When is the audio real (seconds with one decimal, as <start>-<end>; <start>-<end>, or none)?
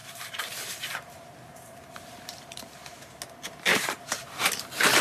3.0-3.7; 4.4-5.0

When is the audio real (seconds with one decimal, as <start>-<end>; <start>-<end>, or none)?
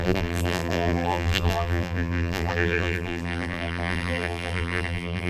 none